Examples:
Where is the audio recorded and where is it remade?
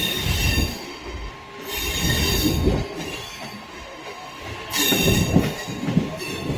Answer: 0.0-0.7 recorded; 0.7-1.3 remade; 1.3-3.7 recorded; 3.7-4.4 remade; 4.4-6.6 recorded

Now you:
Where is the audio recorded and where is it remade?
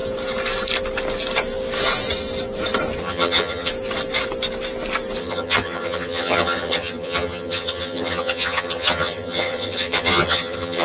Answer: 0.0-3.0 recorded; 3.0-3.7 remade; 3.7-5.2 recorded; 5.2-10.8 remade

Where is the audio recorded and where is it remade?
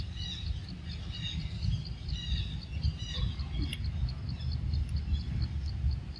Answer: 0.0-6.2 recorded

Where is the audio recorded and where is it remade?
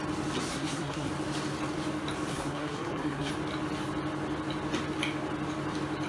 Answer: 0.0-0.5 recorded; 0.5-1.1 remade; 1.1-2.3 recorded; 2.3-3.3 remade; 3.3-6.1 recorded